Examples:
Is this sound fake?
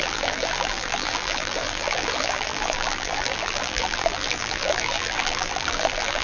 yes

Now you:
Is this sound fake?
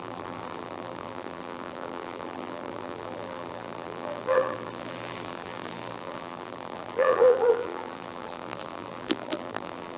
yes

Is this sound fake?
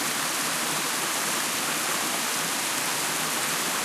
no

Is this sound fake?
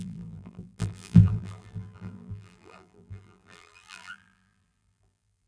yes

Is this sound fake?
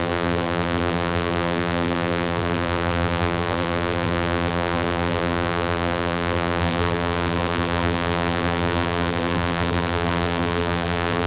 yes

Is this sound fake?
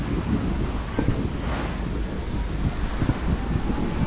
no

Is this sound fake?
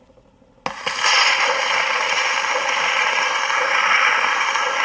no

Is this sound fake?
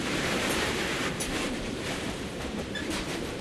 yes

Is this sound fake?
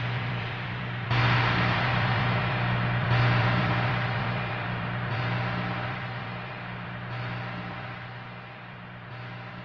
yes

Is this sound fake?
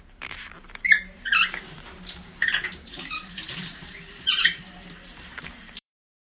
yes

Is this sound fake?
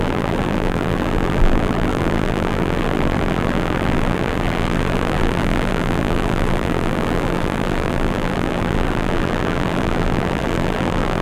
yes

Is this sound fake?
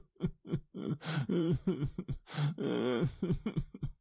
yes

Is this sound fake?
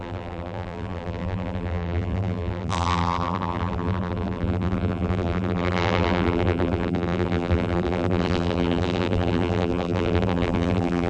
yes